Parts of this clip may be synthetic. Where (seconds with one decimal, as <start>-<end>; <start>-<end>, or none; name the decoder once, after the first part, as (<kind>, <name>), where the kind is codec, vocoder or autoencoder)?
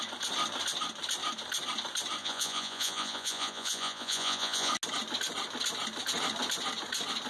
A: 2.2-4.7 (vocoder, Vocos)